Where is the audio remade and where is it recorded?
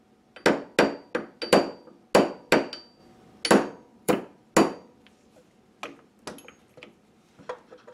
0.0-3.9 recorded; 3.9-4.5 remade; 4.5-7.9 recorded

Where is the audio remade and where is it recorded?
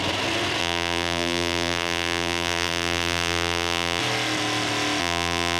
0.0-0.6 recorded; 0.6-4.0 remade; 4.0-5.0 recorded; 5.0-5.6 remade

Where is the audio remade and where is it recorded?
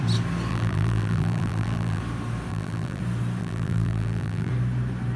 0.0-0.5 recorded; 0.5-2.0 remade; 2.0-2.5 recorded; 2.5-3.0 remade; 3.0-3.4 recorded; 3.4-4.5 remade; 4.5-5.2 recorded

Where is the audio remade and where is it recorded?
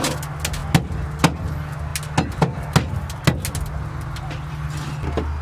0.0-5.4 recorded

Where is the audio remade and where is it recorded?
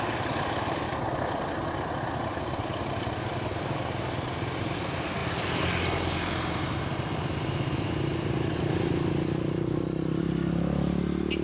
0.0-11.4 recorded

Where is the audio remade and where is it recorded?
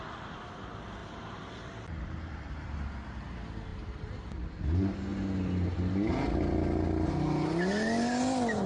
0.0-1.0 recorded; 1.0-3.2 remade; 3.2-3.7 recorded; 3.7-4.2 remade; 4.2-8.7 recorded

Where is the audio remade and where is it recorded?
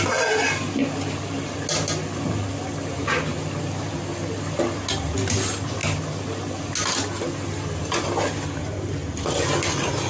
0.0-10.1 recorded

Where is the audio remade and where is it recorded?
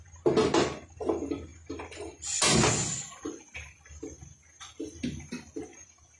0.0-6.2 recorded